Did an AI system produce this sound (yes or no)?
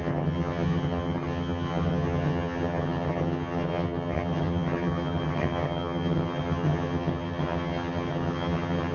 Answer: yes